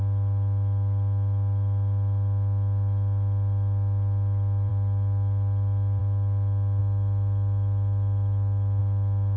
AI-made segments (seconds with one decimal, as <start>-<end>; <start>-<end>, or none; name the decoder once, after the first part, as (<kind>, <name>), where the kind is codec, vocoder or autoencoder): 6.8-8.8 (vocoder, BigVGAN v2)